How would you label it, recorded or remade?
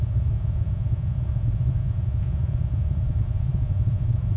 remade